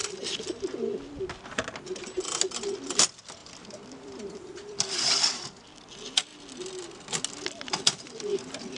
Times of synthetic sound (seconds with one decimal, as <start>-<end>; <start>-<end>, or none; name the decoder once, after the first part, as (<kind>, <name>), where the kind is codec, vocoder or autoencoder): 0.0-1.2 (vocoder, BigVGAN v2); 3.4-5.6